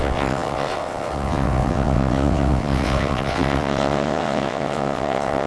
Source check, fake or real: fake